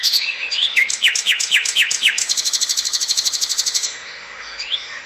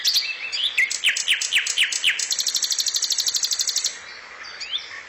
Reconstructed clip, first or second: first